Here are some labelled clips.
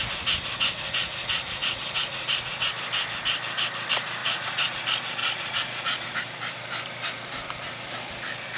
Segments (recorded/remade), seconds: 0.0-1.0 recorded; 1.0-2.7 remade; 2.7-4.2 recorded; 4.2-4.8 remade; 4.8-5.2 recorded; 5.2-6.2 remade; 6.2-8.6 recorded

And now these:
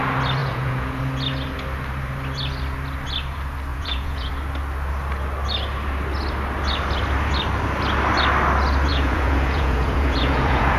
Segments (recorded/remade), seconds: 0.0-0.4 recorded; 0.4-1.0 remade; 1.0-3.7 recorded; 3.7-4.3 remade; 4.3-8.9 recorded; 8.9-10.8 remade

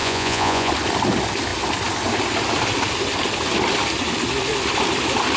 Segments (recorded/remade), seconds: 0.0-0.7 remade; 0.7-5.4 recorded

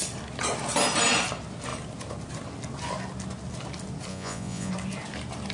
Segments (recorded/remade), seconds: 0.0-4.1 recorded; 4.1-4.7 remade; 4.7-5.5 recorded

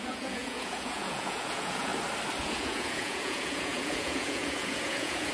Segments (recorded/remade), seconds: 0.0-1.9 remade; 1.9-2.4 recorded; 2.4-5.3 remade